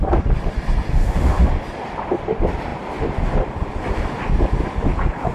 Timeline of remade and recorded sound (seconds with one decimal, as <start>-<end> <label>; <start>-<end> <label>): 0.0-0.9 recorded; 0.9-1.5 remade; 1.5-5.3 recorded